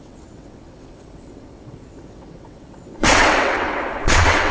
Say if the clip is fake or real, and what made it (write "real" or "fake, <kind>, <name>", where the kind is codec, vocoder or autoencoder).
fake, vocoder, WaveNeXt